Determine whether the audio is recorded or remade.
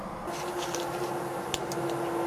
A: recorded